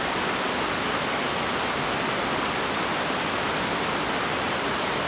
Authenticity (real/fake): real